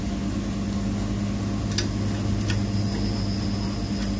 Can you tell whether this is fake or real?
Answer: real